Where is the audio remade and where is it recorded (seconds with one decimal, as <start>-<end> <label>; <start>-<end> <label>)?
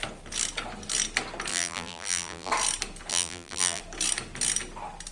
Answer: 0.0-1.5 recorded; 1.5-2.5 remade; 2.5-3.1 recorded; 3.1-3.8 remade; 3.8-5.1 recorded